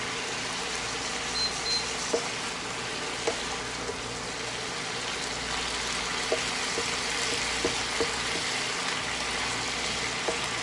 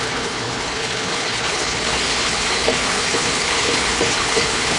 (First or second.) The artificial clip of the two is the second